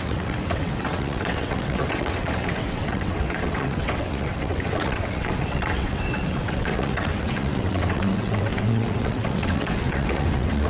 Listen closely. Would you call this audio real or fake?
fake